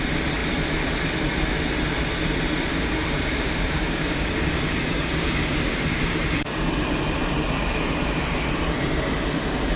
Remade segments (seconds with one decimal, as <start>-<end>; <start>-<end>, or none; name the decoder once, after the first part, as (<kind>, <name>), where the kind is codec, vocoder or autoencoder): 2.7-6.7 (codec, DAC)